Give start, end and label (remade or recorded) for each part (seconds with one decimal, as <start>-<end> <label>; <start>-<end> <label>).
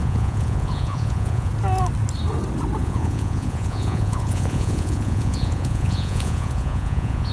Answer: 0.0-1.5 remade; 1.5-2.8 recorded; 2.8-7.3 remade